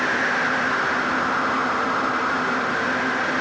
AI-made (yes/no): no